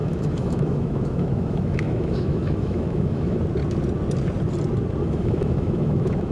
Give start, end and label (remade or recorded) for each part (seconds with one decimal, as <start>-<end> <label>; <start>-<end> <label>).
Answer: 0.0-3.4 remade; 3.4-5.0 recorded; 5.0-6.3 remade